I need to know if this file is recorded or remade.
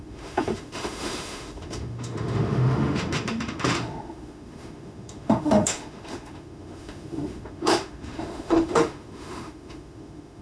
remade